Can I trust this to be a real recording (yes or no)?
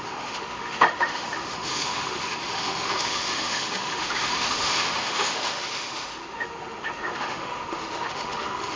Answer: no